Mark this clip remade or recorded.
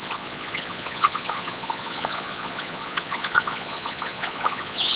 remade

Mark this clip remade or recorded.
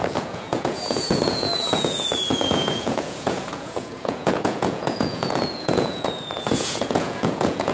remade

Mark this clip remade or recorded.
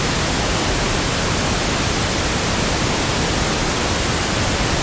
recorded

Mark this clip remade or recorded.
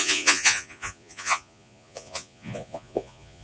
remade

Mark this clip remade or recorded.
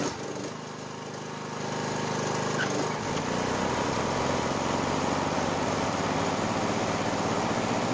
recorded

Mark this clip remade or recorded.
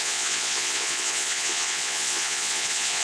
remade